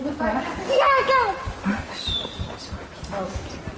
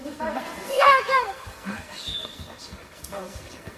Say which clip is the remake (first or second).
second